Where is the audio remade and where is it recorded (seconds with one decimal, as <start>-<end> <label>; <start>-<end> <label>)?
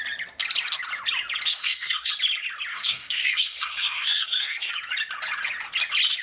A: 0.0-1.5 recorded; 1.5-2.1 remade; 2.1-2.7 recorded; 2.7-4.7 remade; 4.7-6.2 recorded